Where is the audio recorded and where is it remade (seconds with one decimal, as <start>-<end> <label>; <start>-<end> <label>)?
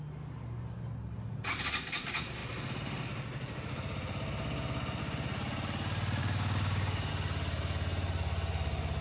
0.0-6.2 recorded; 6.2-7.1 remade; 7.1-9.0 recorded